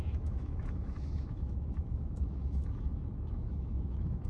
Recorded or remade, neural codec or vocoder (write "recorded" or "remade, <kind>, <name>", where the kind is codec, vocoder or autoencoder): remade, autoencoder, DAC-VAE